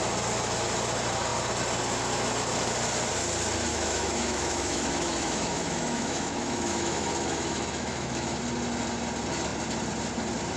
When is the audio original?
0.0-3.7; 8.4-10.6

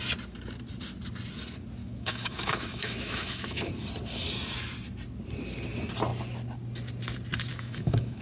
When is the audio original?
0.0-1.8; 3.7-7.5

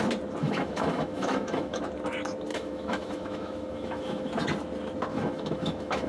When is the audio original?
0.0-0.4; 1.8-2.5; 4.3-5.1